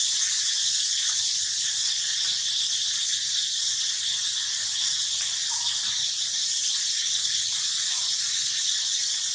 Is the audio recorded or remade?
recorded